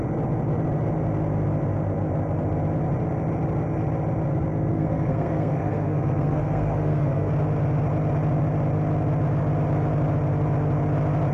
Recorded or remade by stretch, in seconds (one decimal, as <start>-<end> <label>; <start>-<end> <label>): 0.0-4.7 recorded; 4.7-7.3 remade; 7.3-11.3 recorded